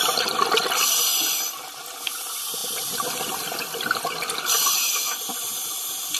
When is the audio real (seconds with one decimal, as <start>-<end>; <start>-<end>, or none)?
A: 0.0-6.2